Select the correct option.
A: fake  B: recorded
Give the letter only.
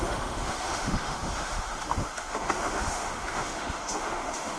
A